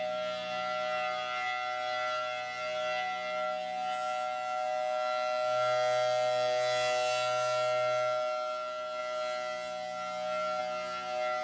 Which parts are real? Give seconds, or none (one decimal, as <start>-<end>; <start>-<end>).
0.0-11.4

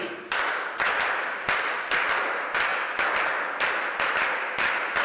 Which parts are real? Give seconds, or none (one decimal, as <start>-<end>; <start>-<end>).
0.0-5.0

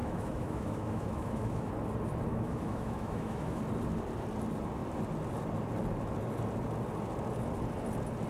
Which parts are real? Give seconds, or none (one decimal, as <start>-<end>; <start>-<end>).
1.7-2.3; 3.6-8.3